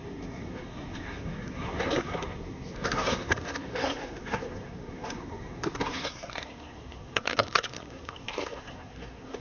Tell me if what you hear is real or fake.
fake